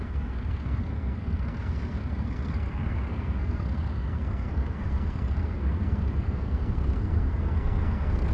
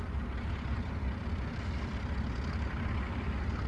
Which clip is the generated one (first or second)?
first